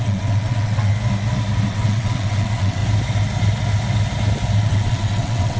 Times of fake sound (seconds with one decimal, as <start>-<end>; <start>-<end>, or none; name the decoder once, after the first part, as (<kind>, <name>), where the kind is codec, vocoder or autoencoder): 0.0-0.9 (vocoder, WaveNeXt); 1.7-2.8; 4.6-5.6